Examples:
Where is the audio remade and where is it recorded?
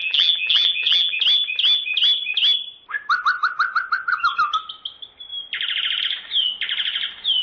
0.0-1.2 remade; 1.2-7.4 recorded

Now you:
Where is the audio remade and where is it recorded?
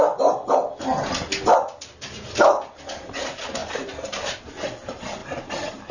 0.0-3.6 recorded; 3.6-4.4 remade; 4.4-5.2 recorded; 5.2-5.9 remade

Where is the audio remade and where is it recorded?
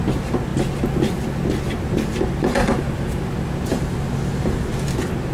0.0-5.3 recorded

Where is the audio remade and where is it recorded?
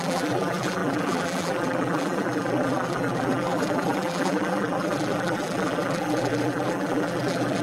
0.0-7.6 remade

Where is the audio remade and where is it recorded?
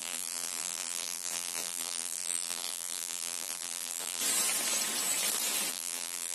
0.0-4.2 remade; 4.2-5.7 recorded; 5.7-6.3 remade